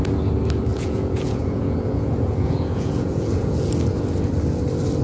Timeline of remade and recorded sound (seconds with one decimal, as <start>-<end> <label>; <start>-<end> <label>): 0.0-0.7 recorded; 0.7-3.7 remade; 3.7-5.0 recorded